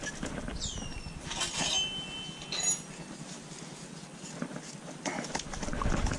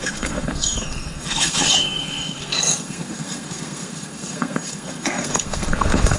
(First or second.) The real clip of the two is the first